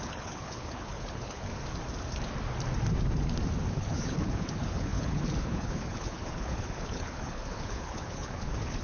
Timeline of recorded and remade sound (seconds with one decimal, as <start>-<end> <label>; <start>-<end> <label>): 0.0-1.5 remade; 1.5-3.7 recorded; 3.7-8.8 remade